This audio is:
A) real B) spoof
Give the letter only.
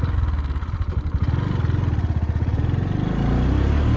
A